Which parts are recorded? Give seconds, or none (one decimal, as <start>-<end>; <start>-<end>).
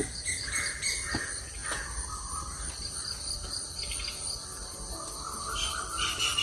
0.0-6.4